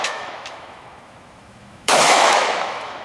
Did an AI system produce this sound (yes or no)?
yes